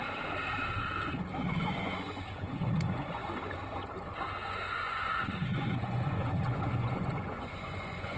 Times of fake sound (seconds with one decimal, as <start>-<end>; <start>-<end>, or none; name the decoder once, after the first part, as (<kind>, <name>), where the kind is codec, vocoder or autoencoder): 1.4-3.2 (vocoder, Vocos); 4.4-8.2